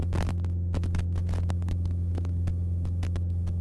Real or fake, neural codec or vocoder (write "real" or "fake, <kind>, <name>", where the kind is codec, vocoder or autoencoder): real